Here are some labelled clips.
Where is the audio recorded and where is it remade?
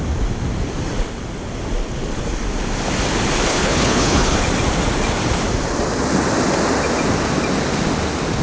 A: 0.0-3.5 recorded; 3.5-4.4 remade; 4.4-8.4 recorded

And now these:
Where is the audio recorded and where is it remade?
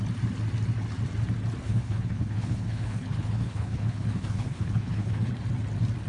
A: 0.0-1.6 recorded; 1.6-5.3 remade; 5.3-6.1 recorded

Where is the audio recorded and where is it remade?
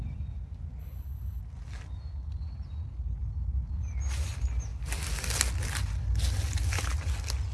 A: 0.0-0.8 recorded; 0.8-1.4 remade; 1.4-7.5 recorded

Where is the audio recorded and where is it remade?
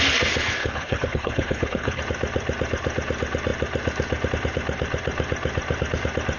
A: 0.0-0.6 recorded; 0.6-2.0 remade; 2.0-6.4 recorded